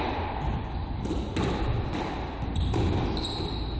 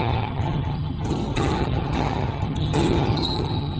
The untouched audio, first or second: first